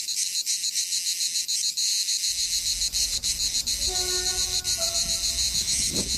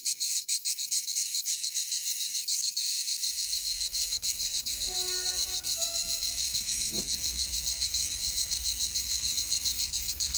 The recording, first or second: first